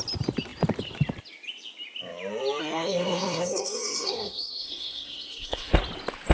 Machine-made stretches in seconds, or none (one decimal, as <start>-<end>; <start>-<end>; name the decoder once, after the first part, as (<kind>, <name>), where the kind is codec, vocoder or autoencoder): 2.6-5.7 (codec, SNAC)